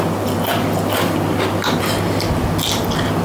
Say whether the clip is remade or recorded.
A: recorded